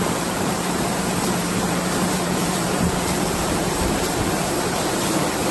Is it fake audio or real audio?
fake